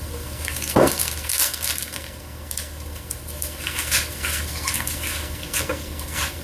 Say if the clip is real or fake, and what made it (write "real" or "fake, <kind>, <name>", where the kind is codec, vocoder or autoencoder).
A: fake, codec, SNAC